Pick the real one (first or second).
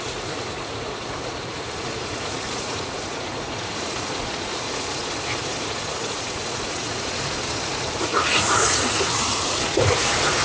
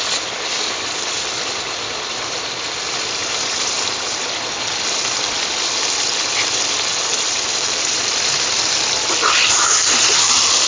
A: second